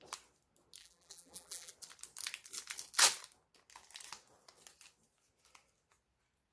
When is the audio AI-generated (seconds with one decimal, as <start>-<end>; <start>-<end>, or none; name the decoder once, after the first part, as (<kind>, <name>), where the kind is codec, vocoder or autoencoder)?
0.8-1.7 (vocoder, BigVGAN v2)